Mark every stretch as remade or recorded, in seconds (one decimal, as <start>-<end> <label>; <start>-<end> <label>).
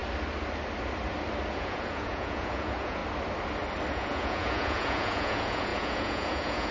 0.0-1.5 recorded; 1.5-3.0 remade; 3.0-3.9 recorded; 3.9-6.7 remade